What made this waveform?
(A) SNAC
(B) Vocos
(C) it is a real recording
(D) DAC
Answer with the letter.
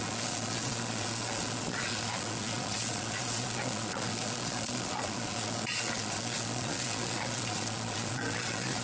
B